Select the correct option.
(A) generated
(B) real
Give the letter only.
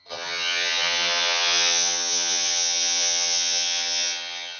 A